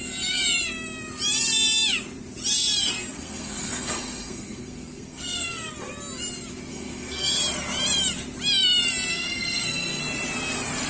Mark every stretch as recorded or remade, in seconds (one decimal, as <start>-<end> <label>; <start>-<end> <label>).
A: 0.0-2.8 recorded; 2.8-5.7 remade; 5.7-6.7 recorded; 6.7-7.4 remade; 7.4-9.1 recorded; 9.1-10.0 remade; 10.0-10.9 recorded